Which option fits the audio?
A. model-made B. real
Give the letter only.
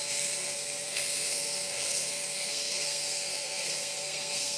A